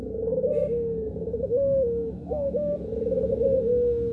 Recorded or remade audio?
remade